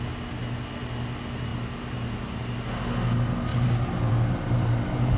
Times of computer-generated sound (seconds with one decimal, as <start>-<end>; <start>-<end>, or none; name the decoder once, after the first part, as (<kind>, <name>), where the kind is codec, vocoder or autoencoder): 1.5-2.4 (vocoder, BigVGAN v2); 3.5-5.2